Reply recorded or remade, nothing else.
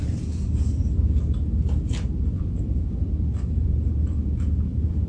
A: remade